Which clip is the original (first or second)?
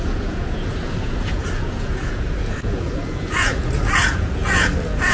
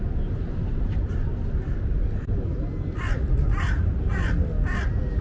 second